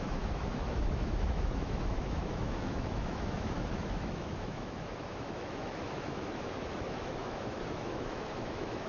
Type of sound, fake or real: fake